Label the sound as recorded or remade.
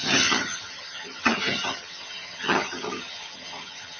remade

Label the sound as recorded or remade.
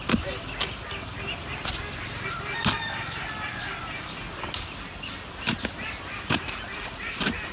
recorded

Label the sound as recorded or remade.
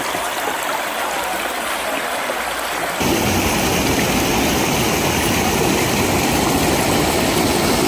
recorded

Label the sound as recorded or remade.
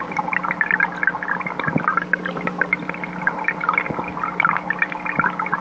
recorded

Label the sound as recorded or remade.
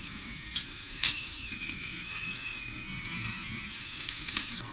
remade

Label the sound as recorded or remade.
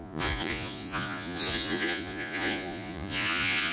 remade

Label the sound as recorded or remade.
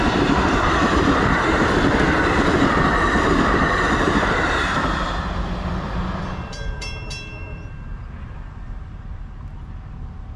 remade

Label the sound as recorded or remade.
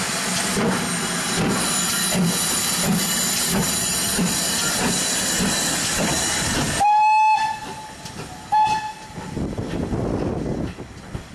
recorded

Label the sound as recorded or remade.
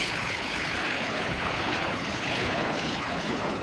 remade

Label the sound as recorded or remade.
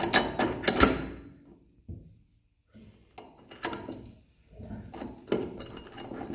recorded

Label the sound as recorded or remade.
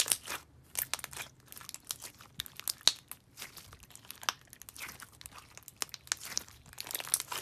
recorded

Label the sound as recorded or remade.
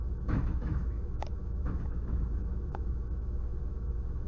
remade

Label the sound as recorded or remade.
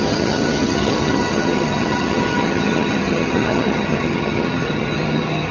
remade